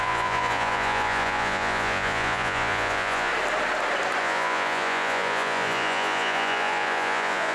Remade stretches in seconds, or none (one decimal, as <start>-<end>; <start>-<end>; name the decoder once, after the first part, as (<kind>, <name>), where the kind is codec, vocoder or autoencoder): 0.0-3.3 (vocoder, Vocos); 4.2-7.5